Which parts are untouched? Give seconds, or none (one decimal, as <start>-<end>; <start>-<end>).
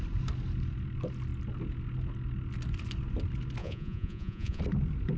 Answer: 0.0-3.6; 4.6-5.2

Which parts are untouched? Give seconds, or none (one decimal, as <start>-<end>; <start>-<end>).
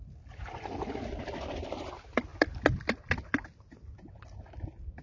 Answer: 0.0-5.0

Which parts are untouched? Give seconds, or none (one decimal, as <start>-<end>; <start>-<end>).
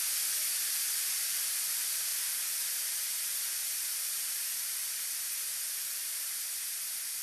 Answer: 0.0-2.1; 6.4-7.2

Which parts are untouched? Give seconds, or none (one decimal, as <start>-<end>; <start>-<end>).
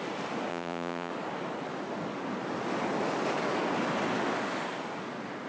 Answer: 0.0-0.5; 1.1-5.5